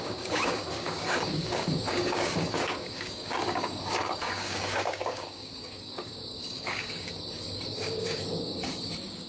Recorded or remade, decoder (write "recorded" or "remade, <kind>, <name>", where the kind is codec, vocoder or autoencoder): remade, codec, DAC